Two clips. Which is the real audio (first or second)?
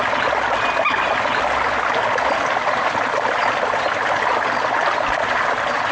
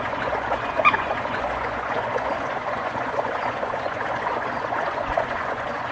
first